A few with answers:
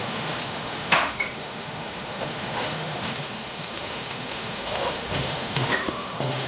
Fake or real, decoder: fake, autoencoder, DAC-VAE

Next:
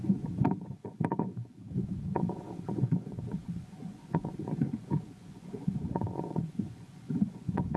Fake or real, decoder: fake, vocoder, Vocos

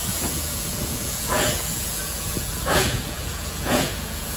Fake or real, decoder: fake, vocoder, Vocos